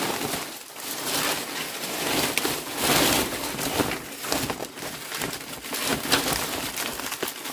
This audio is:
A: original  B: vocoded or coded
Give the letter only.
A